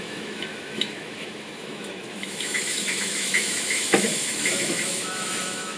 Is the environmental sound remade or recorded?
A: remade